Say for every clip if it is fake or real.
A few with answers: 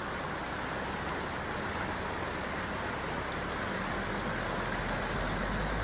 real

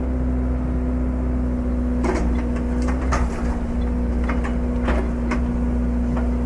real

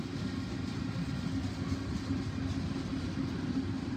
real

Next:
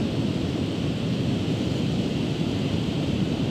fake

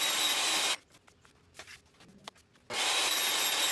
real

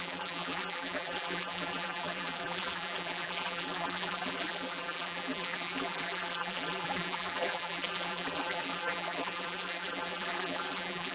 fake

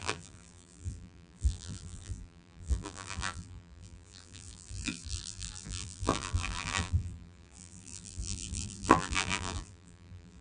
fake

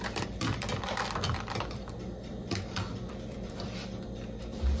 fake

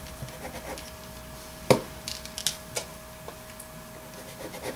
real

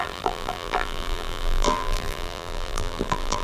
fake